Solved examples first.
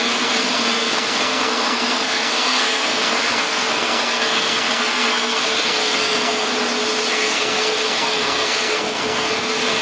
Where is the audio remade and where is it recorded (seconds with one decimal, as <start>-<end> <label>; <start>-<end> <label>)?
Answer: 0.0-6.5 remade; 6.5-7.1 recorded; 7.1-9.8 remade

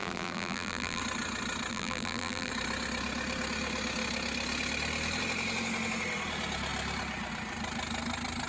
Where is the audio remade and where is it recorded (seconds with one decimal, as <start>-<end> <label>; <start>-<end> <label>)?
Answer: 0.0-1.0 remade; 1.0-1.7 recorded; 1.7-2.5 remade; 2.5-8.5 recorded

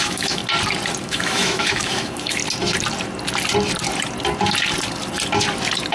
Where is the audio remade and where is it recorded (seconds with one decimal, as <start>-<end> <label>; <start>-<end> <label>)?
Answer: 0.0-0.4 remade; 0.4-1.0 recorded; 1.0-2.4 remade; 2.4-5.9 recorded